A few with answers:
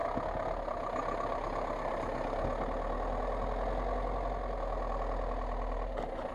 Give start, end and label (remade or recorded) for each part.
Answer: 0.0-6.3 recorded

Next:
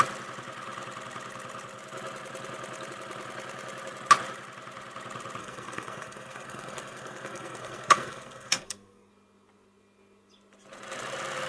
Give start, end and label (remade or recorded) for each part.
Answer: 0.0-5.4 recorded; 5.4-9.1 remade; 9.1-11.5 recorded